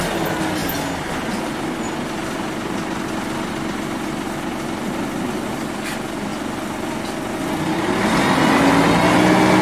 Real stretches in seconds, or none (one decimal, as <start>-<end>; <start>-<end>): 0.0-9.6